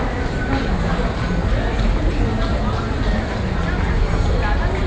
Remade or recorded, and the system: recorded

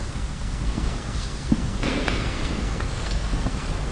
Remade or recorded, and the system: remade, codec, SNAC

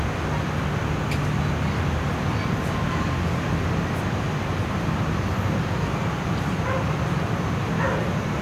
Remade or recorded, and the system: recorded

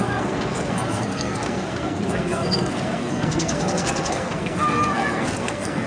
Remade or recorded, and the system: remade, codec, SNAC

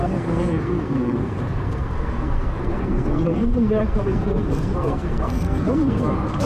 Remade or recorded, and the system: remade, codec, SNAC